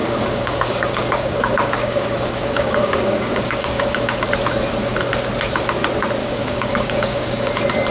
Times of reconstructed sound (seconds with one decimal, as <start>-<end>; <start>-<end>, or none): 0.0-4.3; 6.2-7.5